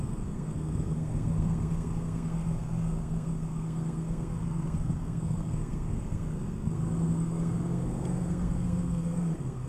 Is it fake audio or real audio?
fake